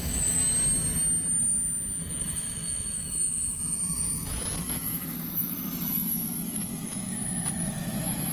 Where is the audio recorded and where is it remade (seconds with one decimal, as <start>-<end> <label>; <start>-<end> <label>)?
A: 0.0-0.4 remade; 0.4-2.2 recorded; 2.2-8.3 remade